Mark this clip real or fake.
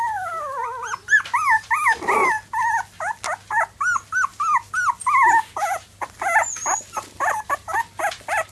real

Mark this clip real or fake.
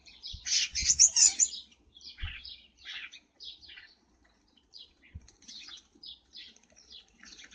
fake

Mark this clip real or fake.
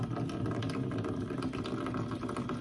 real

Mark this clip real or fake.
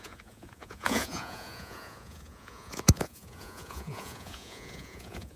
fake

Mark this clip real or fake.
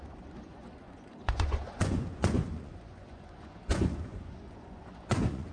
fake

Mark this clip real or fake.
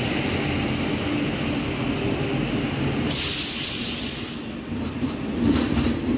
real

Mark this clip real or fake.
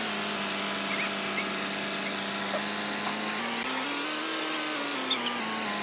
real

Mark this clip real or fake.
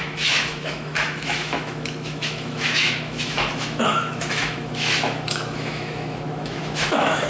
fake